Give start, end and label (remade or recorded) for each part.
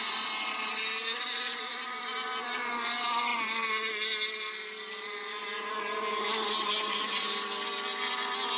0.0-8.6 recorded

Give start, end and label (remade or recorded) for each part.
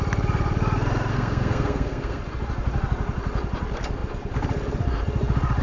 0.0-1.1 recorded; 1.1-2.2 remade; 2.2-5.6 recorded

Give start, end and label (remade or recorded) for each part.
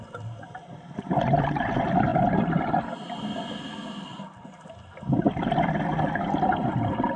0.0-7.2 recorded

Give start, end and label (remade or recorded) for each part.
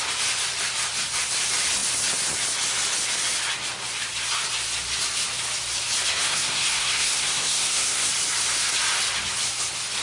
0.0-6.1 recorded; 6.1-8.1 remade; 8.1-10.0 recorded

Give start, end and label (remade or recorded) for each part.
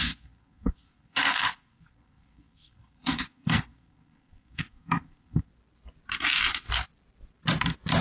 0.0-5.5 remade; 5.5-8.0 recorded